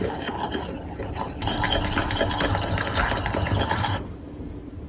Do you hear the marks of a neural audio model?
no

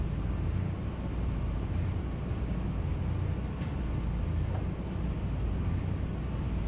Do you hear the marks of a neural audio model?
no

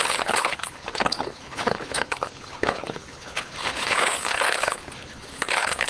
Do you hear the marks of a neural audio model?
yes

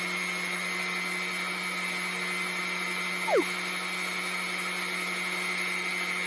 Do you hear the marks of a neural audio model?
no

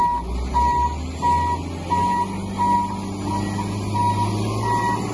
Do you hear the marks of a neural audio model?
no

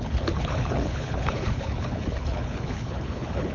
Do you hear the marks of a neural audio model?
yes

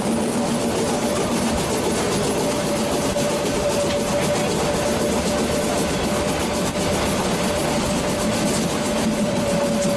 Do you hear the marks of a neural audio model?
no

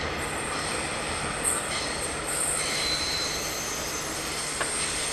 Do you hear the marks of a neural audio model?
no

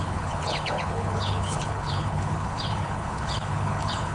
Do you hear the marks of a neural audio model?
yes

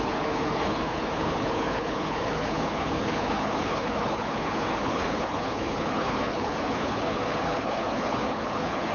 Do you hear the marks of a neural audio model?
yes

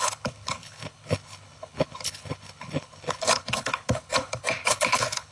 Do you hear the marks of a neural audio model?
yes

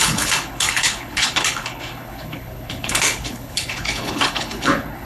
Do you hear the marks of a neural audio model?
yes